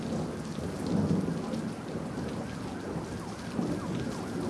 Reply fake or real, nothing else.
real